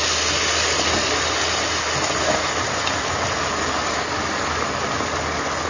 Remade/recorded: recorded